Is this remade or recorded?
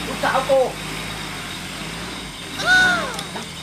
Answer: recorded